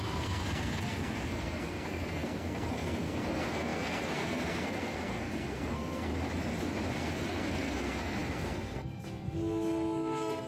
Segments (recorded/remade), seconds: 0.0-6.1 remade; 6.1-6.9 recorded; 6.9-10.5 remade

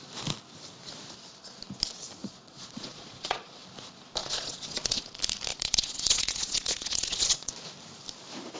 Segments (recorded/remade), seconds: 0.0-2.2 recorded; 2.2-3.5 remade; 3.5-4.2 recorded; 4.2-5.1 remade; 5.1-5.5 recorded; 5.5-7.5 remade; 7.5-8.6 recorded

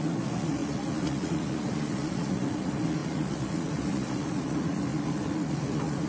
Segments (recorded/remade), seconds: 0.0-6.1 remade

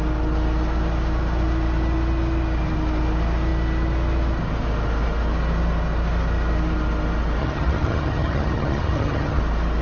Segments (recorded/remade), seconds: 0.0-7.4 recorded; 7.4-9.4 remade; 9.4-9.8 recorded

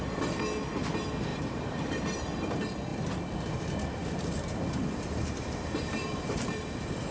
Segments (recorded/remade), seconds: 0.0-1.3 recorded; 1.3-2.0 remade; 2.0-4.0 recorded; 4.0-7.1 remade

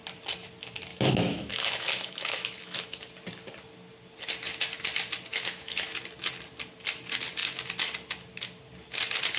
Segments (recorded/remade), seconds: 0.0-0.9 recorded; 0.9-3.1 remade; 3.1-5.3 recorded; 5.3-6.0 remade; 6.0-9.4 recorded